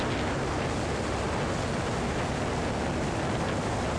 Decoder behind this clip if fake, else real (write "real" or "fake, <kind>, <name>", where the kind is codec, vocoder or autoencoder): real